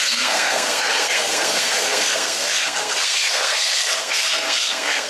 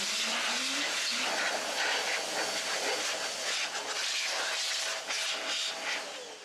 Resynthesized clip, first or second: first